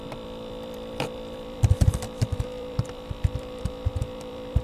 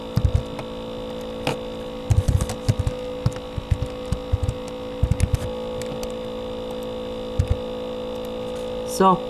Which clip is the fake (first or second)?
first